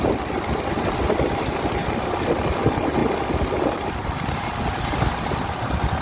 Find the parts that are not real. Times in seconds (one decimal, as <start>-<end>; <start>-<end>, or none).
0.0-6.0